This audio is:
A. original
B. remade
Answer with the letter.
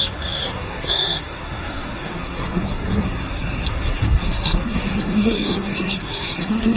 B